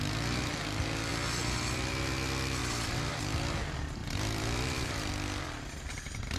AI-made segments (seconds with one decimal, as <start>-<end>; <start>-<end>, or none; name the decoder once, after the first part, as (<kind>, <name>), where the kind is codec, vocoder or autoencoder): 2.6-3.2 (vocoder, BigVGAN v2); 4.0-5.1